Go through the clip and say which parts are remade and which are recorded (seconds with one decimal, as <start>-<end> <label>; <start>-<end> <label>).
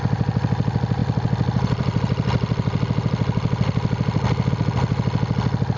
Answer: 0.0-1.0 recorded; 1.0-4.5 remade; 4.5-5.8 recorded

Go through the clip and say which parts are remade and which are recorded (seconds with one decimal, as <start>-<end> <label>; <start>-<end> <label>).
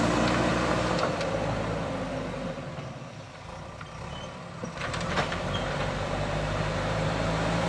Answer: 0.0-0.5 recorded; 0.5-1.9 remade; 1.9-4.6 recorded; 4.6-7.7 remade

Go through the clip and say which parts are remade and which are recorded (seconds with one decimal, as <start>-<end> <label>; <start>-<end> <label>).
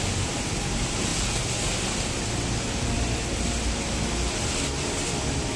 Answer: 0.0-5.6 recorded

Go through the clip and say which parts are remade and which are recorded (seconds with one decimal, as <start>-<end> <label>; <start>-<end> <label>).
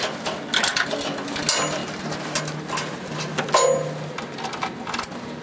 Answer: 0.0-5.4 recorded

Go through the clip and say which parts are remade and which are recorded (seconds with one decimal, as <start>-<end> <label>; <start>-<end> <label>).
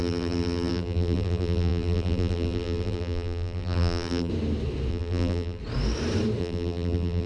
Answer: 0.0-4.3 remade; 4.3-4.9 recorded; 4.9-5.6 remade; 5.6-6.4 recorded; 6.4-7.3 remade